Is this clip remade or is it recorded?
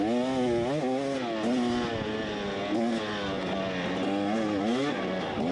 recorded